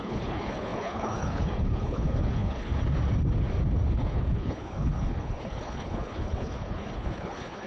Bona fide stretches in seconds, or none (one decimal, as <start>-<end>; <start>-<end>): 2.7-3.9